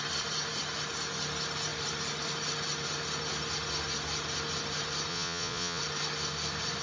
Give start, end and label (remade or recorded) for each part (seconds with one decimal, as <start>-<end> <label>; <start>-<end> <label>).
0.0-5.1 recorded; 5.1-5.8 remade; 5.8-6.8 recorded